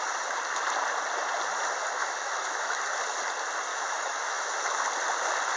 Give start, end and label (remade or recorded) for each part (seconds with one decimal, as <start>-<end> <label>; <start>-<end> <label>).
0.0-2.0 recorded; 2.0-2.8 remade; 2.8-3.7 recorded; 3.7-4.6 remade; 4.6-5.6 recorded